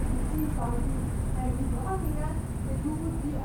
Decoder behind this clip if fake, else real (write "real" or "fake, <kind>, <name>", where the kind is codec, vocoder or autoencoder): real